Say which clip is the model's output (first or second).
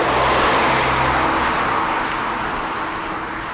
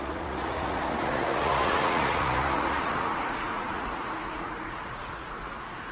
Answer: second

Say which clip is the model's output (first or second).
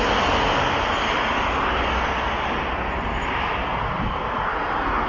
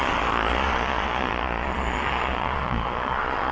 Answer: second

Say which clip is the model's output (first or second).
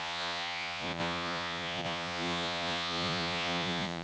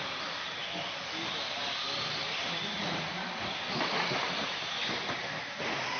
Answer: first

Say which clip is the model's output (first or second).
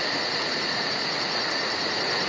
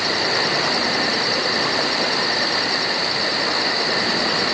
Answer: first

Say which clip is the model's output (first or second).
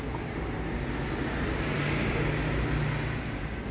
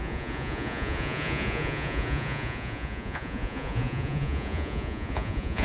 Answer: second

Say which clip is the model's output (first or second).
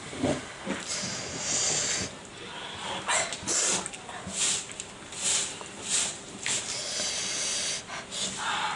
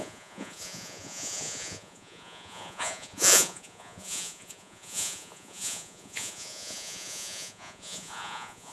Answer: second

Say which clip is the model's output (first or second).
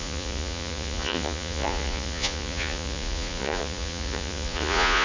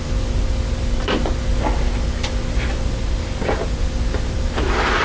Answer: first